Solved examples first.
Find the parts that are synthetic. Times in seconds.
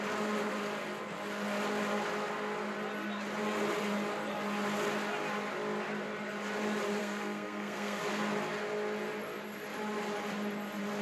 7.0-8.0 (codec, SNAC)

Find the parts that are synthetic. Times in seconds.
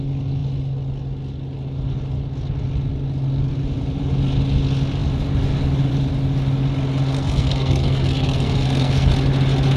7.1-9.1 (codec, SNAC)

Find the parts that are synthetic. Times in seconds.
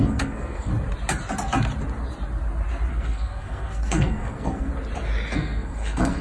0.0-0.7 (codec, SNAC); 2.9-4.7; 5.3-6.2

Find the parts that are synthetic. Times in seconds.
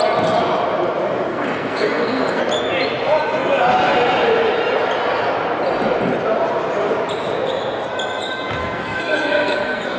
1.3-2.4 (codec, SNAC); 8.6-10.0